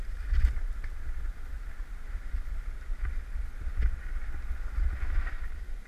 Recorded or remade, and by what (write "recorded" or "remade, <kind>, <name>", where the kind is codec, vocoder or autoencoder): recorded